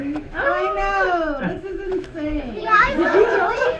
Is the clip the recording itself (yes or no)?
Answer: no